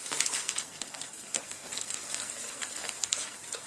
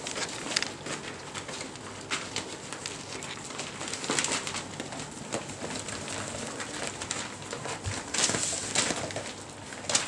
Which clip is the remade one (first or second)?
first